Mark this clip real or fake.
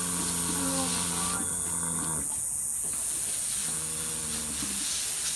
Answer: real